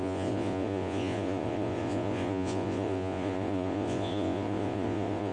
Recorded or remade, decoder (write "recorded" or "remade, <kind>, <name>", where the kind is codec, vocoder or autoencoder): remade, vocoder, Vocos